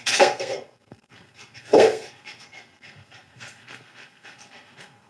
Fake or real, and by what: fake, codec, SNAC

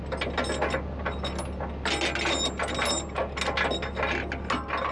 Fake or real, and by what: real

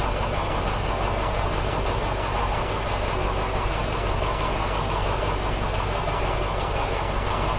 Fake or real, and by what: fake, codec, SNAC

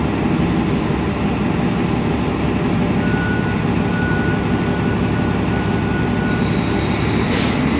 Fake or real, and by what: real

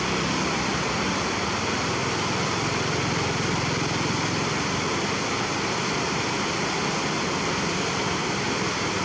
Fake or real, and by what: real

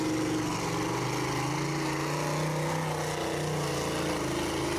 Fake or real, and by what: real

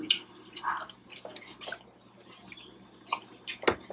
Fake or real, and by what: real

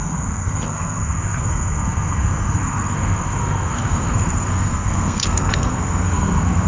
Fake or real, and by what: fake, codec, SNAC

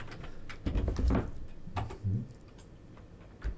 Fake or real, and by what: real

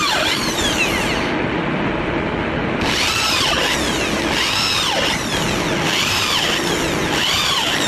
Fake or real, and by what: real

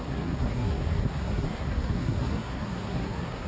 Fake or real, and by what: fake, codec, SNAC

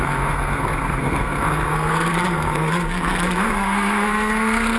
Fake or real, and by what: fake, codec, SNAC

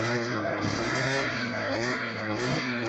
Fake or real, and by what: fake, codec, SNAC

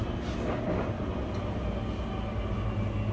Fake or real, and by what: real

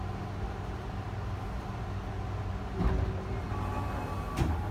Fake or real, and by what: real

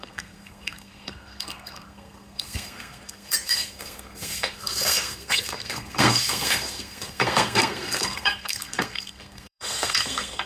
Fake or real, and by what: fake, codec, SNAC